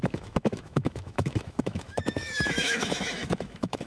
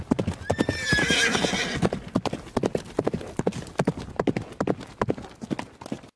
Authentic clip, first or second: second